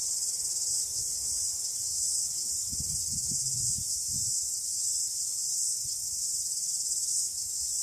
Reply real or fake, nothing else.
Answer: fake